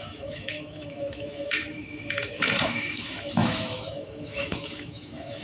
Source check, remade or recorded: remade